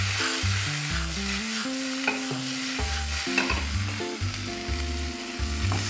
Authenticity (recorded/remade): recorded